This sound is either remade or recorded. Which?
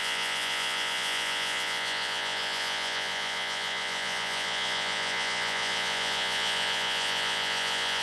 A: remade